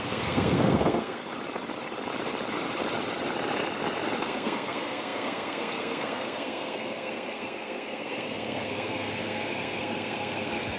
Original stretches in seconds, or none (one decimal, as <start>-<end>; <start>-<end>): 1.2-4.2